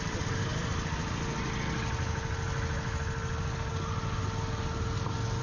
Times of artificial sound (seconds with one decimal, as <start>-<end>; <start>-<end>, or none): none